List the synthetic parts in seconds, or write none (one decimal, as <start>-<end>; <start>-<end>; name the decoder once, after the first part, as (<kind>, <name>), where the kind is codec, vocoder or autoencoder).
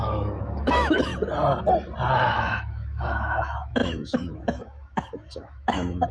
0.0-1.1 (autoencoder, DAC-VAE); 2.1-6.1